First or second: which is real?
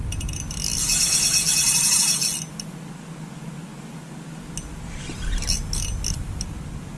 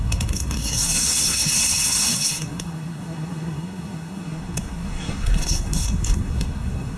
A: first